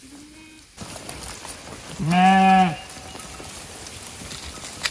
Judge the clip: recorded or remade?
recorded